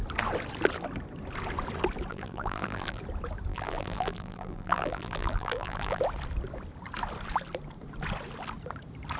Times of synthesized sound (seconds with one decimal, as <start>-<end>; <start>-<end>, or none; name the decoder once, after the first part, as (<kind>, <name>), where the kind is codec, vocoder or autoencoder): 2.1-3.0 (vocoder, BigVGAN v2); 3.5-6.0